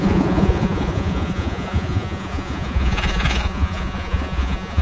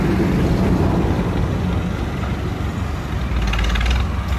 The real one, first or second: second